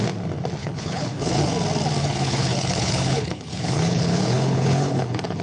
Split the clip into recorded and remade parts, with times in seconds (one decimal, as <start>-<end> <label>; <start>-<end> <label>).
0.0-0.6 recorded; 0.6-1.4 remade; 1.4-2.0 recorded; 2.0-5.4 remade